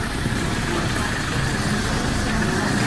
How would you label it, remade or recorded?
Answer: recorded